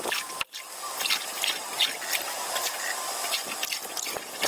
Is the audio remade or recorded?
recorded